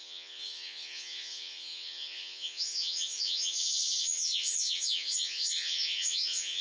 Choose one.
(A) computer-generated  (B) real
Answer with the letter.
A